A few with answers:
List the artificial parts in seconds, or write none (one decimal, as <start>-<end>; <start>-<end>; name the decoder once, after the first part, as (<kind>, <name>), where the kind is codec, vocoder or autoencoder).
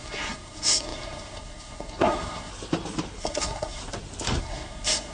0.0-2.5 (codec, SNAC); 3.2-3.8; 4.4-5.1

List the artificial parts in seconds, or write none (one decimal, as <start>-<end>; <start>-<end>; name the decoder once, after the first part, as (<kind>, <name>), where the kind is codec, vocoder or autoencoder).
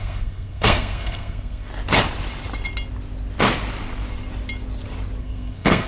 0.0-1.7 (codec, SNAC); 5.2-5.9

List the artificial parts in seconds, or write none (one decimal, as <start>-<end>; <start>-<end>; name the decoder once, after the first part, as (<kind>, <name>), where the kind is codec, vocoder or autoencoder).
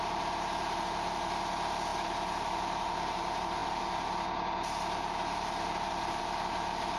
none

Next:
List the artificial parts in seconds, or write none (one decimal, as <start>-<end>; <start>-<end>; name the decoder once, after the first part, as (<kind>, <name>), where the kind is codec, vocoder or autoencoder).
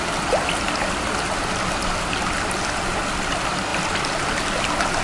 none